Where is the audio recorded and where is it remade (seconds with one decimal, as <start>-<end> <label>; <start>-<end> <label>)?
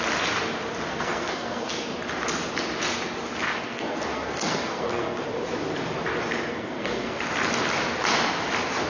0.0-0.9 recorded; 0.9-1.7 remade; 1.7-3.6 recorded; 3.6-5.2 remade; 5.2-6.5 recorded; 6.5-7.2 remade; 7.2-8.9 recorded